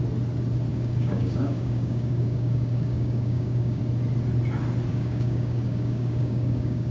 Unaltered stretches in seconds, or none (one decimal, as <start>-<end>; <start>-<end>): 0.0-0.7; 3.8-4.9